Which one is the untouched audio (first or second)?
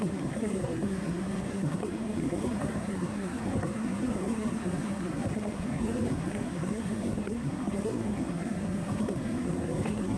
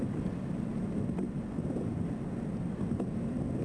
second